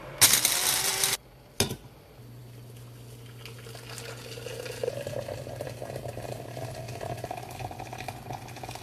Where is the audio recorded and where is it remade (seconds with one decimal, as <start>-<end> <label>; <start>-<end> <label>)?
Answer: 0.0-8.8 recorded